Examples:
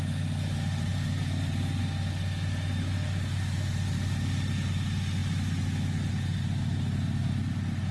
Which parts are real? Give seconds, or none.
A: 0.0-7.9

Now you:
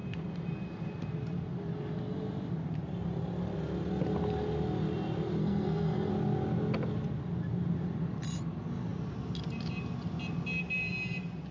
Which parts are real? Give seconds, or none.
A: 0.0-5.4; 6.1-11.5

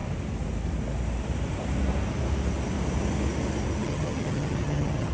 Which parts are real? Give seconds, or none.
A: 0.0-3.8

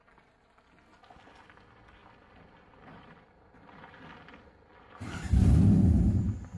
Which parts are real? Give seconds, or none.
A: 0.0-6.6

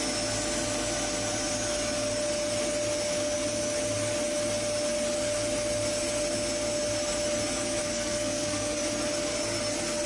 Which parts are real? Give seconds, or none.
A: 0.0-7.8; 8.8-10.1